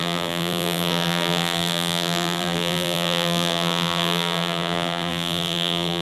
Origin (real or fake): fake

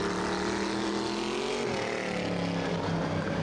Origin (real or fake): real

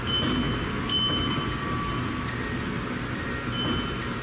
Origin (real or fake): real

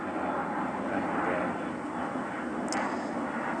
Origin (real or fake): real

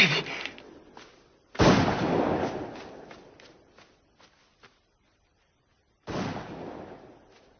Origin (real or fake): real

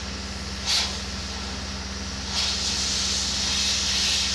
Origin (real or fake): real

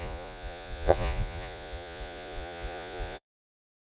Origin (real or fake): fake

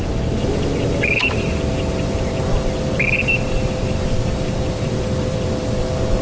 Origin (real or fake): fake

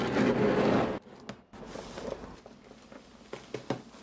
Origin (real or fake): real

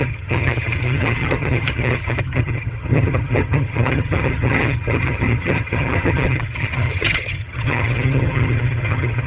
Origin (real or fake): fake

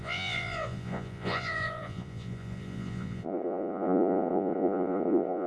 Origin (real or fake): fake